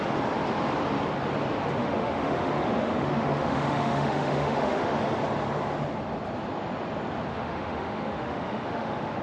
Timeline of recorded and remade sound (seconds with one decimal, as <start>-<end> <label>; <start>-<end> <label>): 0.0-1.8 recorded; 1.8-5.0 remade; 5.0-7.3 recorded; 7.3-9.2 remade